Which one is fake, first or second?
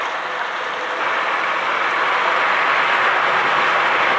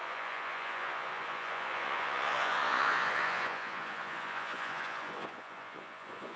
second